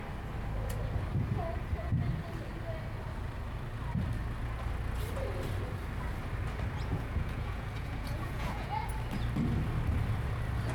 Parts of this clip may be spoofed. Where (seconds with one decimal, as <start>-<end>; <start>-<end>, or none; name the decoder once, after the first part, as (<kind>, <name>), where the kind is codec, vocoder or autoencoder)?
6.9-8.9 (vocoder, Vocos)